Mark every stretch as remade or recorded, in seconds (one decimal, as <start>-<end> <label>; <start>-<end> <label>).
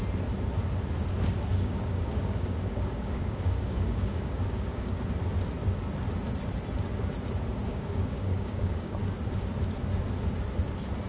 0.0-1.5 recorded; 1.5-4.9 remade; 4.9-7.7 recorded; 7.7-9.0 remade; 9.0-11.1 recorded